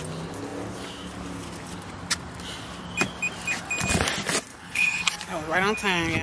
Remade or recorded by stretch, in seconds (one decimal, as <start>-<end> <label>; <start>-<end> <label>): 0.0-4.5 recorded; 4.5-5.1 remade; 5.1-6.2 recorded